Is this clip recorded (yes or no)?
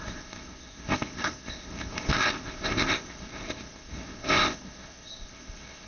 no